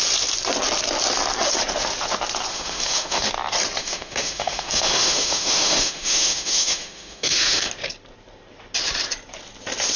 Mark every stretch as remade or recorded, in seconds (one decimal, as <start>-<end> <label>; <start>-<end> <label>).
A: 0.0-2.5 recorded; 2.5-3.3 remade; 3.3-3.8 recorded; 3.8-7.7 remade; 7.7-10.0 recorded